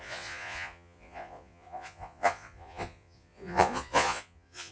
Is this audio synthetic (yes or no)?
yes